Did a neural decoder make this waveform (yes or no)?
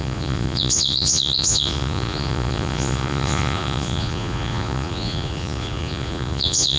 yes